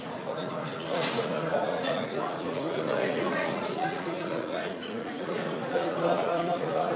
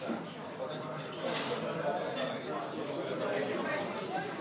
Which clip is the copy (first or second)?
first